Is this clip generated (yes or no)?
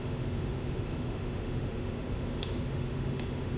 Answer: yes